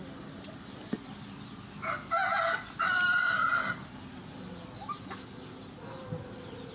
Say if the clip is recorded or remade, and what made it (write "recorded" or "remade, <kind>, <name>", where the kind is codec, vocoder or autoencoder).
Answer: recorded